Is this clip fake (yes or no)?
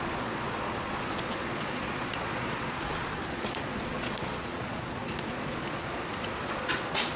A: yes